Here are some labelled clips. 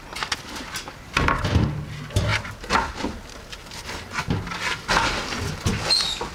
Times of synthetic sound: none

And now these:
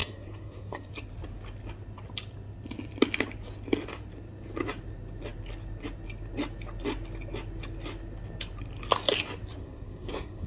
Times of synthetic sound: 0.0-0.9 (codec, SNAC); 9.6-10.5

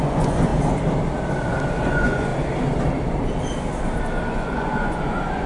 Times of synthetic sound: 0.0-0.5 (vocoder, Vocos); 1.8-2.3; 4.3-5.5

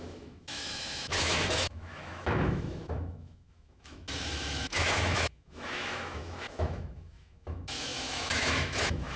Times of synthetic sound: 0.0-9.2 (autoencoder, DAC-VAE)

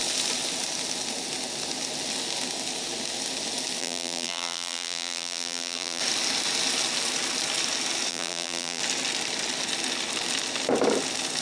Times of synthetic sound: 3.8-6.0 (vocoder, BigVGAN v2); 8.1-8.8